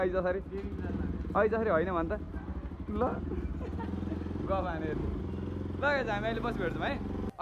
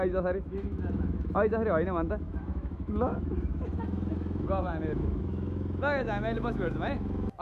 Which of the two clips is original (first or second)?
first